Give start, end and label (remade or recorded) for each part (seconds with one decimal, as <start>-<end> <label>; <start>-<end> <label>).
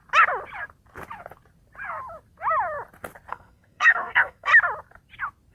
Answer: 0.0-3.3 recorded; 3.3-4.5 remade; 4.5-5.5 recorded